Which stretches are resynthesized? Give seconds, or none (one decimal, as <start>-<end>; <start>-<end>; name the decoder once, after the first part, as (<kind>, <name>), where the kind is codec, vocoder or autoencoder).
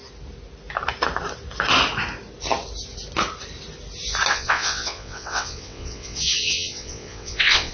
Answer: 4.3-7.7 (vocoder, WaveNeXt)